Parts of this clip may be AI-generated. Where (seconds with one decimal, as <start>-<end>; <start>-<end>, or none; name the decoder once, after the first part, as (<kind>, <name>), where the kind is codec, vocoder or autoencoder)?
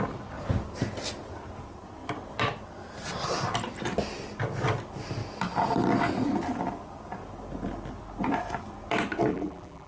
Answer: 9.3-9.9 (vocoder, BigVGAN v2)